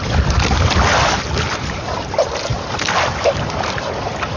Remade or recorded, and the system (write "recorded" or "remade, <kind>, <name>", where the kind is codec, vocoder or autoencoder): recorded